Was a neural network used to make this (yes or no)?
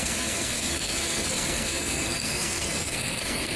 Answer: yes